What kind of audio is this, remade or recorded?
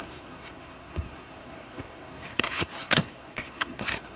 remade